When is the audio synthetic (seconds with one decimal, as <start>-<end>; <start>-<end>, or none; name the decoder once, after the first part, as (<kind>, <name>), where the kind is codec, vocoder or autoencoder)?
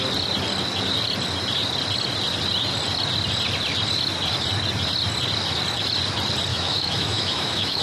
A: 6.5-7.8 (autoencoder, DAC-VAE)